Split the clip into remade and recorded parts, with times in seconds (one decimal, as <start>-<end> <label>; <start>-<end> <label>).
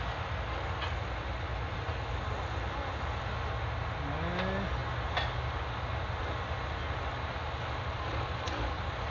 0.0-9.1 recorded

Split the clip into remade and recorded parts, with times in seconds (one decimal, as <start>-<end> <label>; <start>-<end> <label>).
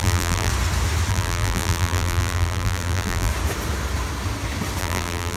0.0-0.5 remade; 0.5-1.1 recorded; 1.1-3.3 remade; 3.3-4.8 recorded; 4.8-5.4 remade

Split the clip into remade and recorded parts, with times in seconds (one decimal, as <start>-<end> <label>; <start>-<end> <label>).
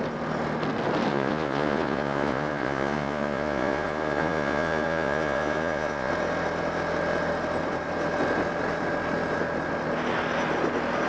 0.0-1.1 recorded; 1.1-6.1 remade; 6.1-11.1 recorded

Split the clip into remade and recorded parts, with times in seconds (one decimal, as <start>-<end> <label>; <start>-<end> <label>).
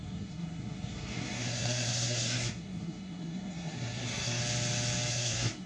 0.0-4.4 remade; 4.4-5.1 recorded; 5.1-5.7 remade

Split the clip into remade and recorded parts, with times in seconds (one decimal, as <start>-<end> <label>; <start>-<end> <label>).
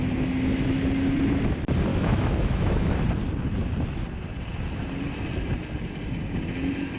0.0-1.9 recorded; 1.9-2.9 remade; 2.9-7.0 recorded